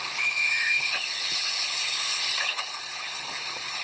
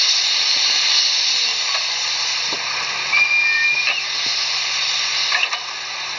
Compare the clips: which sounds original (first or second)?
second